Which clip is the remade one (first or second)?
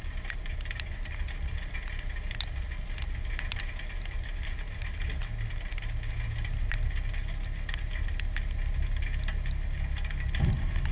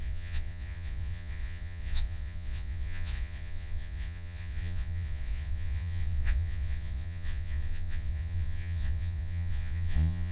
second